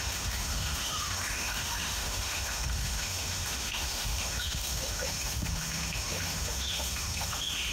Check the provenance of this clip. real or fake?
fake